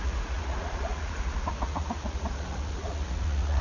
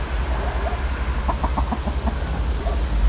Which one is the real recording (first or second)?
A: second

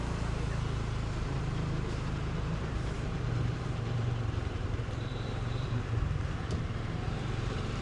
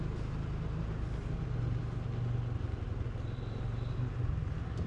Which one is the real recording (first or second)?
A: second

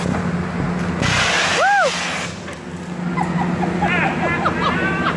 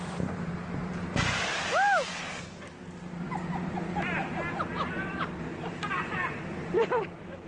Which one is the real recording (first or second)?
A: first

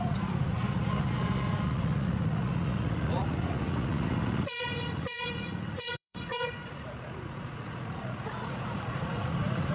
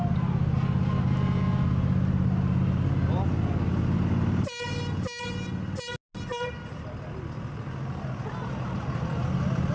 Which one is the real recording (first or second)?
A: second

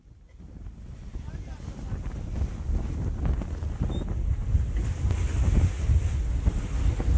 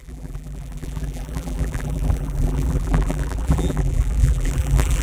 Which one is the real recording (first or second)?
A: first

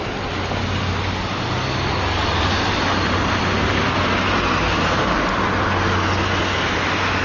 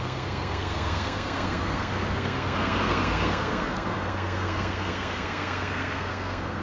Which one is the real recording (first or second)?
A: first